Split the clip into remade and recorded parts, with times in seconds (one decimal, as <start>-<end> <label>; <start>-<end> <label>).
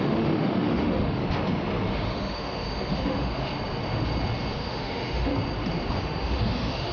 0.0-1.2 remade; 1.2-1.9 recorded; 1.9-3.5 remade; 3.5-4.6 recorded; 4.6-5.3 remade; 5.3-6.0 recorded; 6.0-6.9 remade